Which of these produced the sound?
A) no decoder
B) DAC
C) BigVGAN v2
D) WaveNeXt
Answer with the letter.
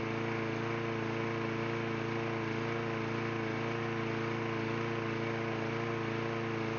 A